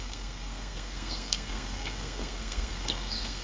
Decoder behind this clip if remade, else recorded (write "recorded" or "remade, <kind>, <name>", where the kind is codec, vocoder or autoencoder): remade, codec, SNAC